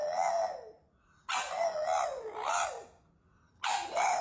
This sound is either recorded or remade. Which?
recorded